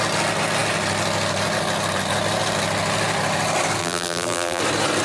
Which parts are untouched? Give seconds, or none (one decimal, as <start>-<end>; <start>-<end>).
0.0-3.8; 4.6-5.0